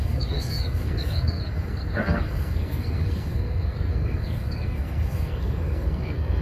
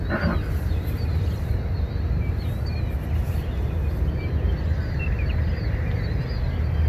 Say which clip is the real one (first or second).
second